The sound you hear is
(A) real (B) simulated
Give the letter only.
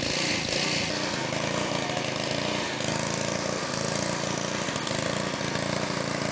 A